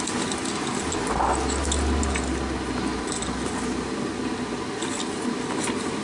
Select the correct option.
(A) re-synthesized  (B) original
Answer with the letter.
B